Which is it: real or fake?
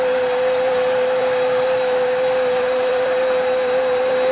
fake